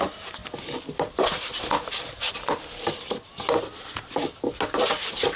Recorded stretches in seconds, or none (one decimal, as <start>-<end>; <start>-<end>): 0.0-5.4